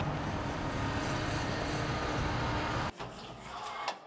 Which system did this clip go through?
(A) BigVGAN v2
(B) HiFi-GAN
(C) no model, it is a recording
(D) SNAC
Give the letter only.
C